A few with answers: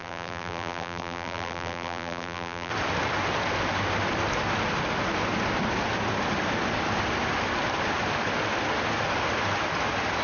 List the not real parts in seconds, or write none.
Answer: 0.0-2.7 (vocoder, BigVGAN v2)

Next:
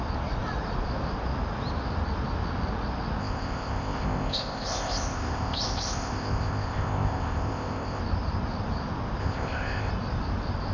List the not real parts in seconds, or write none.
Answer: 3.2-8.0 (codec, ZipCodec); 9.2-9.9

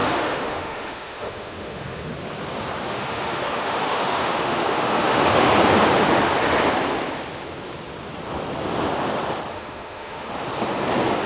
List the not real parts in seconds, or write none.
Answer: 0.0-2.1 (autoencoder, DAC-VAE); 2.9-5.5; 9.5-10.3

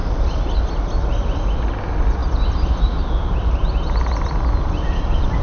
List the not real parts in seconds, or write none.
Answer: none

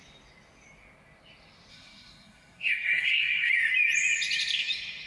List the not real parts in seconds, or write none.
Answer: 1.7-3.5 (codec, SNAC)